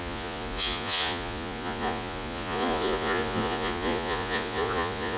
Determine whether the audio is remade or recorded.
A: remade